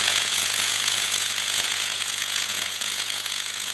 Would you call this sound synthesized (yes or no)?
yes